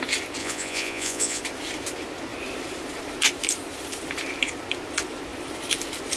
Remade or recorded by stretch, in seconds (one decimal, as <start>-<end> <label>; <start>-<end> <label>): 0.0-0.4 recorded; 0.4-1.4 remade; 1.4-6.2 recorded